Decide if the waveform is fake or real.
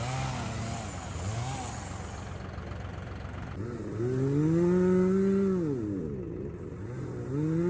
real